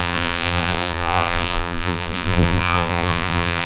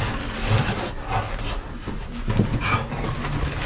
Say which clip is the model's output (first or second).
first